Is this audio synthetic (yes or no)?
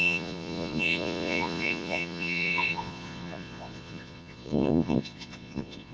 yes